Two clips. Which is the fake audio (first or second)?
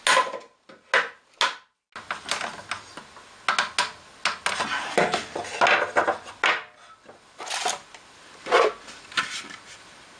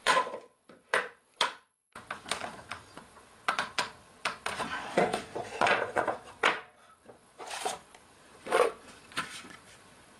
second